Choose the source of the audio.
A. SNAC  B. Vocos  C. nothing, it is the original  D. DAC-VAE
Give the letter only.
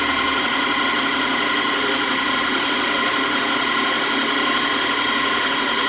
C